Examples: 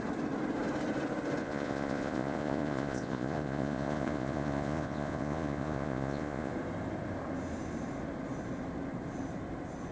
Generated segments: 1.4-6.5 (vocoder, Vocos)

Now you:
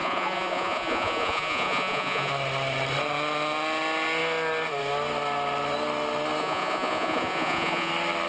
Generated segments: 0.0-2.3 (vocoder, Vocos); 6.4-7.9